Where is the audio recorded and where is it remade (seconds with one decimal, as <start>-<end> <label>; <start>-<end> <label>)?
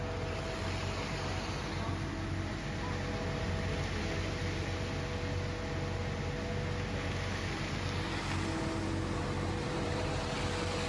0.0-9.6 recorded; 9.6-10.4 remade; 10.4-10.9 recorded